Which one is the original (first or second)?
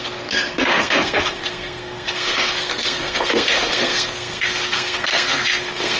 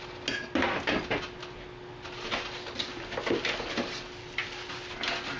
second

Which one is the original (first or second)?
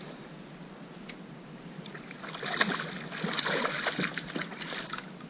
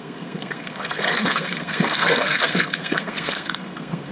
first